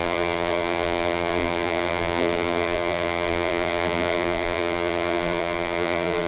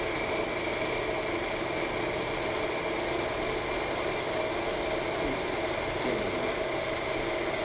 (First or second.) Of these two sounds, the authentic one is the second